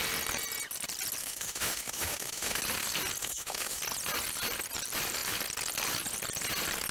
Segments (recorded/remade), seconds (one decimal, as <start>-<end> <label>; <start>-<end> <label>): 0.0-1.2 recorded; 1.2-2.6 remade; 2.6-3.2 recorded; 3.2-3.8 remade; 3.8-6.9 recorded